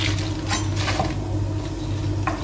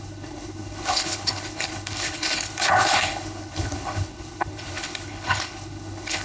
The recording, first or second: first